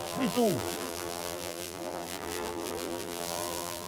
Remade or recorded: remade